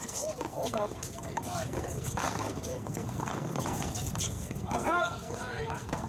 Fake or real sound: fake